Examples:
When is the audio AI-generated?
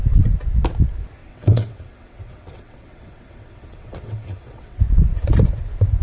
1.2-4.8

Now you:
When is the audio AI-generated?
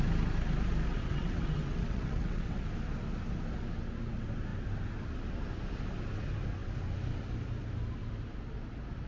0.9-2.6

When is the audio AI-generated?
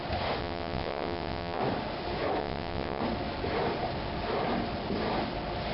0.4-1.6; 2.4-3.0